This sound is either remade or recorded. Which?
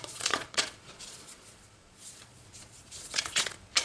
remade